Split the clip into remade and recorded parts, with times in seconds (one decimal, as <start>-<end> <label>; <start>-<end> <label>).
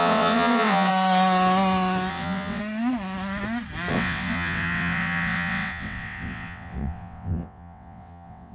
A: 0.0-0.9 remade; 0.9-2.1 recorded; 2.1-2.6 remade; 2.6-3.9 recorded; 3.9-8.5 remade